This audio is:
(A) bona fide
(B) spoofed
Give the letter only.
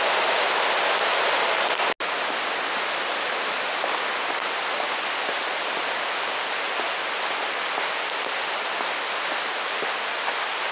A